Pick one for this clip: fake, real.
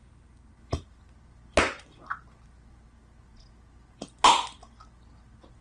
real